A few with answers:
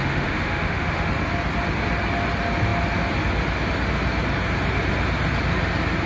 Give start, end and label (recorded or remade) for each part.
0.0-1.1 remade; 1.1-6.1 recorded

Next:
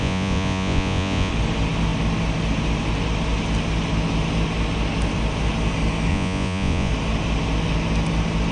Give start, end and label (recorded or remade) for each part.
0.0-1.3 remade; 1.3-6.1 recorded; 6.1-6.9 remade; 6.9-8.5 recorded

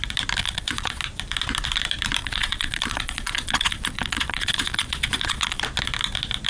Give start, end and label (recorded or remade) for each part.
0.0-0.4 recorded; 0.4-1.0 remade; 1.0-2.2 recorded; 2.2-5.6 remade; 5.6-6.5 recorded

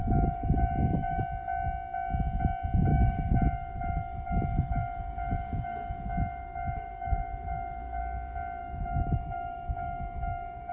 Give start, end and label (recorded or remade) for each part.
0.0-1.2 remade; 1.2-2.9 recorded; 2.9-8.0 remade; 8.0-8.6 recorded; 8.6-10.7 remade

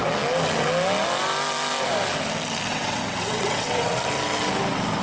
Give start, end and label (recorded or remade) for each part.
0.0-2.7 recorded; 2.7-3.9 remade; 3.9-5.0 recorded

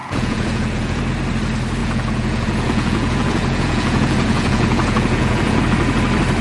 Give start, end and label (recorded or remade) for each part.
0.0-1.0 remade; 1.0-1.8 recorded; 1.8-5.6 remade; 5.6-6.4 recorded